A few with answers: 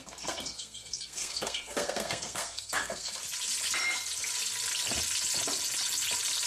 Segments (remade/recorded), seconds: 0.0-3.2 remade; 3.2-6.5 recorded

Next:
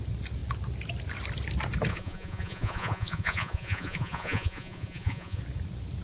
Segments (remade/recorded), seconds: 0.0-1.9 recorded; 1.9-5.4 remade; 5.4-6.0 recorded